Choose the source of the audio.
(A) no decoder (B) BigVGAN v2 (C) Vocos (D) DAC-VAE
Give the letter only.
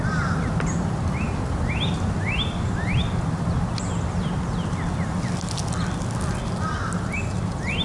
A